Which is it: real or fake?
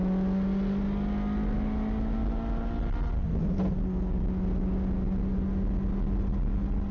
real